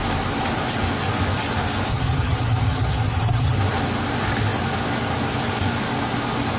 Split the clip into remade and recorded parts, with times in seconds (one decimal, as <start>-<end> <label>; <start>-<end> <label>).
0.0-1.9 recorded; 1.9-3.6 remade; 3.6-6.6 recorded